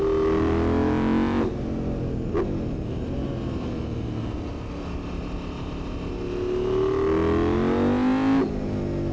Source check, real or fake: real